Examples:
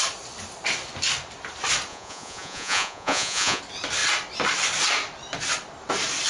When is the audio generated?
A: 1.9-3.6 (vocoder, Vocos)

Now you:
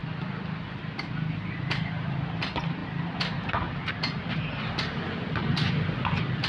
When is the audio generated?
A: none